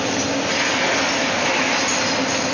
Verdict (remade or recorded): recorded